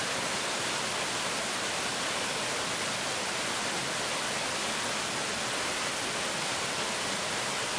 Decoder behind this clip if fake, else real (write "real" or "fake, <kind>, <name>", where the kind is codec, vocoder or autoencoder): real